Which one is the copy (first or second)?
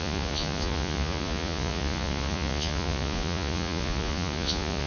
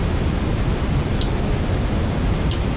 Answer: first